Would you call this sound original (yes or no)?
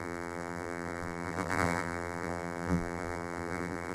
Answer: no